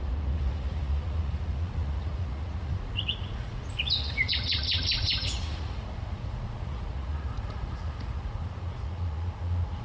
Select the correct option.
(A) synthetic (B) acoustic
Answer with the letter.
A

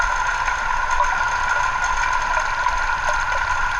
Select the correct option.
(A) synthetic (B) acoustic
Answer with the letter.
B